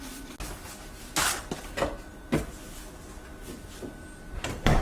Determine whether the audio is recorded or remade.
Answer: recorded